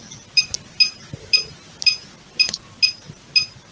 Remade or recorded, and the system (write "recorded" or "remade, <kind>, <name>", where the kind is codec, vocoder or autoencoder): recorded